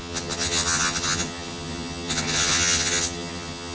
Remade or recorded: remade